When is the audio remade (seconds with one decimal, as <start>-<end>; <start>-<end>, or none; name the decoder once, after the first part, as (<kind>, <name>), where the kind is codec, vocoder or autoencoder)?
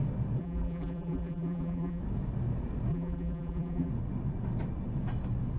0.4-2.0 (vocoder, BigVGAN v2); 2.9-3.9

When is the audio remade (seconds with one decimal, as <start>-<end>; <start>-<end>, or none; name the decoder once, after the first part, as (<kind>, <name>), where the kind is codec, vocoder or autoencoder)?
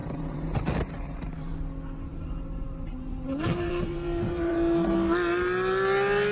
0.0-1.6 (vocoder, BigVGAN v2); 2.1-4.5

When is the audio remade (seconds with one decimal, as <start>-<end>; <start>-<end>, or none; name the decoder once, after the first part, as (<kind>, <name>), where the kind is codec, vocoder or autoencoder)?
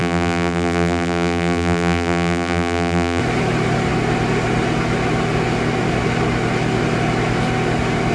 0.0-3.2 (vocoder, BigVGAN v2)